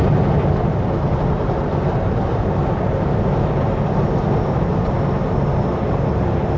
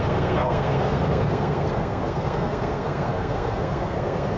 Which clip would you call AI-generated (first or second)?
second